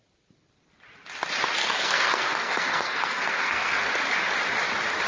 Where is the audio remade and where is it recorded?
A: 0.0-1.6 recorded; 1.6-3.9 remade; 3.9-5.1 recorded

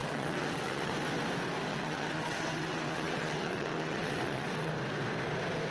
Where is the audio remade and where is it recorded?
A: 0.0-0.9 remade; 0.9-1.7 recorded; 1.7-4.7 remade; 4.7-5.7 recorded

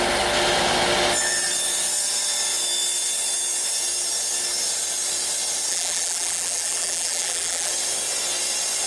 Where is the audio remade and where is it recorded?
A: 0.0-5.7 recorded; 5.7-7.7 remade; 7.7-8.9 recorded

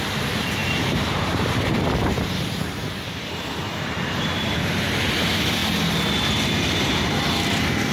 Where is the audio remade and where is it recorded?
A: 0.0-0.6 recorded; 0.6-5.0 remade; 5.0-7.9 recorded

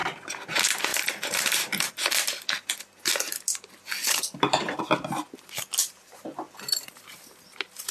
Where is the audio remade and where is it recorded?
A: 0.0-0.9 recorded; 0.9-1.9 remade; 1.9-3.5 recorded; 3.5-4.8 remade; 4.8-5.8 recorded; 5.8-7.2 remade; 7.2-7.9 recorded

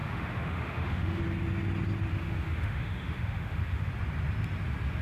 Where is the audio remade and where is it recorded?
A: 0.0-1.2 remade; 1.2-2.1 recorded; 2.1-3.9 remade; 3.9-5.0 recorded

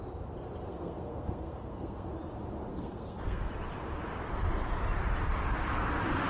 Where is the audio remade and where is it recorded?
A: 0.0-0.7 recorded; 0.7-2.1 remade; 2.1-2.7 recorded; 2.7-3.5 remade; 3.5-6.3 recorded